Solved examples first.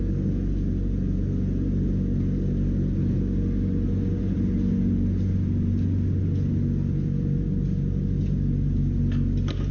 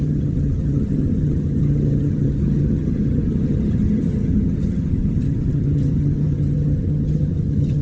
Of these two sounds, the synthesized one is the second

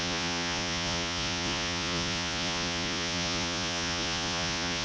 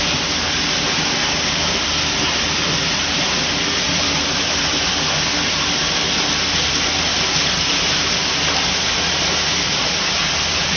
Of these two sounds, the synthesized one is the first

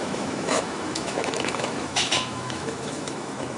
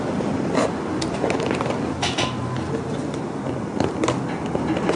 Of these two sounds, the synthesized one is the first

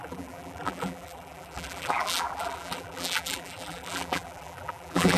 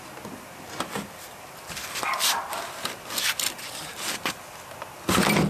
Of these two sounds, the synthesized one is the first